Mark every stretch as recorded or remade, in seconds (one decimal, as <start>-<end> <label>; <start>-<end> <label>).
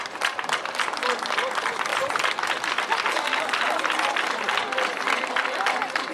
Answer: 0.0-6.1 recorded